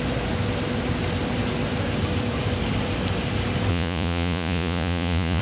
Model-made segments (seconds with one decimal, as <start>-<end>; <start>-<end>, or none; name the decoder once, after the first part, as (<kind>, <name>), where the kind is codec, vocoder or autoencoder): 3.7-5.4 (vocoder, Vocos)